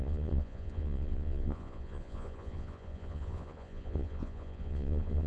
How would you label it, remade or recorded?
remade